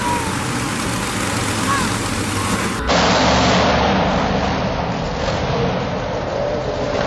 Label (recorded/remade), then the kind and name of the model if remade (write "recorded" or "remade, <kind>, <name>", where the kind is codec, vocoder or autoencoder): recorded